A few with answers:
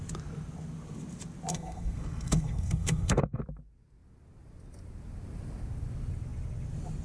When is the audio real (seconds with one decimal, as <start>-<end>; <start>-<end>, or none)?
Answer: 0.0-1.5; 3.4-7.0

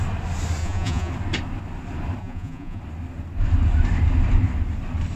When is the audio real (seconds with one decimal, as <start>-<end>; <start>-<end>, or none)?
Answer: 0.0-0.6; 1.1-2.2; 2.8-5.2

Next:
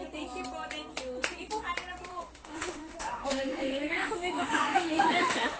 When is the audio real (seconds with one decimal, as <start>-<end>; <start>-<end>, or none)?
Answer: 0.0-2.1

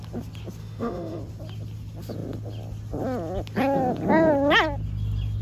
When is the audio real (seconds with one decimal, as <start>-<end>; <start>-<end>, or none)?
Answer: 0.0-0.6; 1.2-5.4

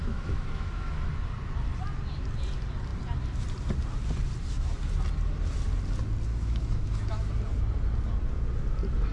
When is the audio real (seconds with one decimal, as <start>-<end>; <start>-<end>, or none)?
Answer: 1.1-6.3; 7.3-9.1

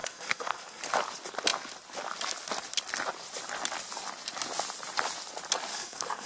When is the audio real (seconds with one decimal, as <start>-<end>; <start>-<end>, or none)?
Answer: 0.8-5.7